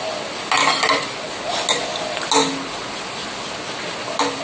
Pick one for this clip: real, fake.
real